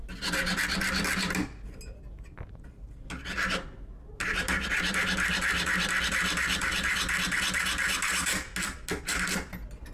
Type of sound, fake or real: real